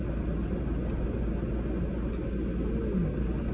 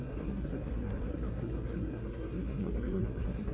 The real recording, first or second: first